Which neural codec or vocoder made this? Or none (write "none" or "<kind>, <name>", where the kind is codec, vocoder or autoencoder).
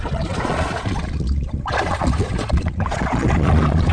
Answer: vocoder, Vocos